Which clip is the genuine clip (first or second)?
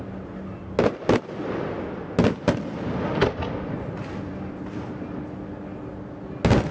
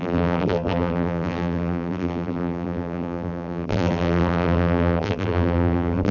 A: first